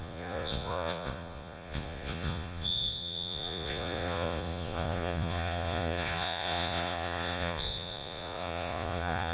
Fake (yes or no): yes